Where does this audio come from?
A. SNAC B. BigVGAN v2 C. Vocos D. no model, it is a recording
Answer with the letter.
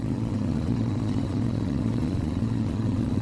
C